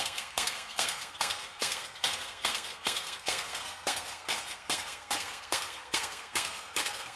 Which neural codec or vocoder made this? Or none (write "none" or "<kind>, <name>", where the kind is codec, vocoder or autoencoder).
codec, SNAC